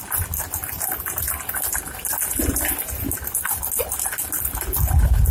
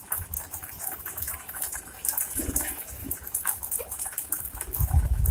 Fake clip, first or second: second